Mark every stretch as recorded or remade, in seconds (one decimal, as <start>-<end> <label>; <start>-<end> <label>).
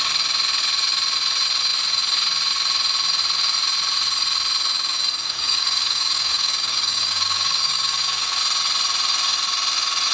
0.0-5.2 recorded; 5.2-8.4 remade; 8.4-10.1 recorded